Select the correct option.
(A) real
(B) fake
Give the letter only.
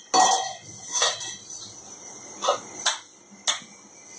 A